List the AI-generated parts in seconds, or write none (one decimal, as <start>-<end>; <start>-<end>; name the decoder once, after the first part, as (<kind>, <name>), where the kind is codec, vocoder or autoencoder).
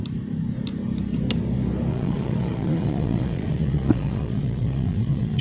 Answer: 1.9-5.4 (vocoder, Vocos)